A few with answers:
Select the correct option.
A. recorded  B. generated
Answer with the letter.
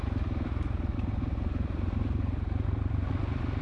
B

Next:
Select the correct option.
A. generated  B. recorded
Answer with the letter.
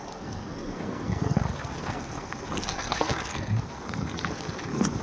A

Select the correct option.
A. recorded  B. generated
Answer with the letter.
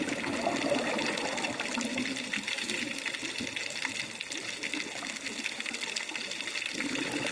A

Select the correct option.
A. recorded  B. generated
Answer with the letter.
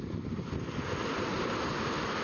A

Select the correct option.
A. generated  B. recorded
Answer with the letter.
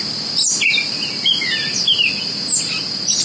B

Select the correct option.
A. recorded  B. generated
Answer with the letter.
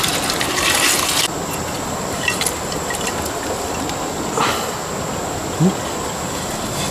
A